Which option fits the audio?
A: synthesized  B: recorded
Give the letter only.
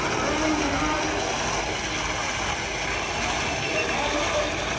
B